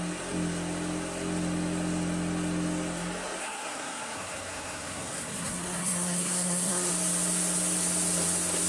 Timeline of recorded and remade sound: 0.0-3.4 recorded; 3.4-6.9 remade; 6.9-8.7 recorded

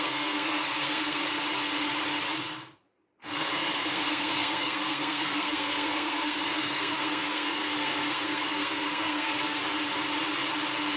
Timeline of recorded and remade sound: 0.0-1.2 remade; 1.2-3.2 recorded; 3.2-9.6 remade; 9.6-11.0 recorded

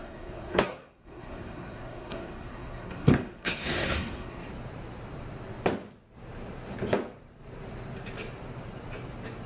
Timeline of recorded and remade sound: 0.0-4.5 remade; 4.5-9.5 recorded

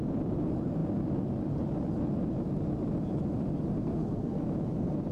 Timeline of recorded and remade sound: 0.0-3.8 recorded; 3.8-4.4 remade; 4.4-5.1 recorded